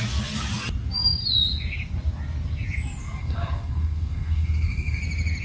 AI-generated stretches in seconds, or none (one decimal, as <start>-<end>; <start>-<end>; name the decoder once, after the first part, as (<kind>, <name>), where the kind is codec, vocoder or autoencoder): 3.2-5.0 (codec, SNAC)